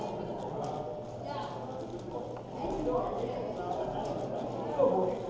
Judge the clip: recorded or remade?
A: recorded